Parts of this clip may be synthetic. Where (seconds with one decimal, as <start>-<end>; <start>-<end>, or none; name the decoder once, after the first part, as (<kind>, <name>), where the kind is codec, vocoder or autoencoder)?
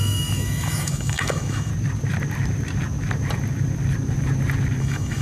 0.0-1.7 (autoencoder, DAC-VAE); 4.8-5.2